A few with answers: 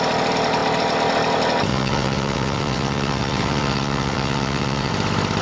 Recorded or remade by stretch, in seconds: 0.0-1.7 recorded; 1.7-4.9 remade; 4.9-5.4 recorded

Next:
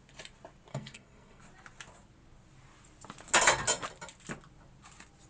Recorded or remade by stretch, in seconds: 0.0-0.7 recorded; 0.7-1.4 remade; 1.4-5.3 recorded

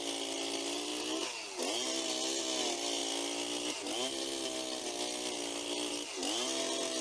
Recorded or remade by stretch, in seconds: 0.0-7.0 recorded

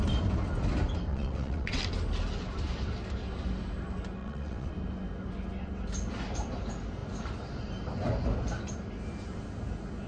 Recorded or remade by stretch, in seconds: 0.0-1.1 recorded; 1.1-1.8 remade; 1.8-4.2 recorded; 4.2-4.7 remade; 4.7-10.1 recorded

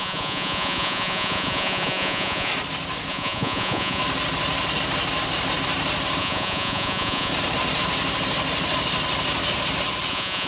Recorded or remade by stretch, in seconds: 0.0-2.5 remade; 2.5-3.1 recorded; 3.1-4.0 remade; 4.0-6.2 recorded; 6.2-7.3 remade; 7.3-10.1 recorded; 10.1-10.5 remade